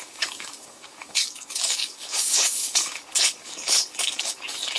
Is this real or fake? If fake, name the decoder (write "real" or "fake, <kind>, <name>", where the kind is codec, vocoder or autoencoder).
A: fake, codec, DAC